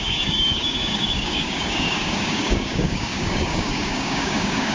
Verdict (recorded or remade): remade